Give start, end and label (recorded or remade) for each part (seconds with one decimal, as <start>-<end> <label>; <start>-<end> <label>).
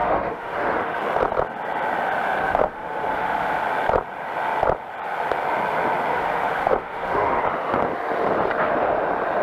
0.0-1.0 remade; 1.0-2.4 recorded; 2.4-3.6 remade; 3.6-6.1 recorded; 6.1-7.4 remade; 7.4-9.4 recorded